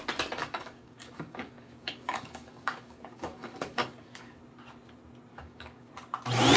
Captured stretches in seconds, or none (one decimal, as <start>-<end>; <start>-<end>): 0.0-0.4; 4.4-5.3; 5.9-6.6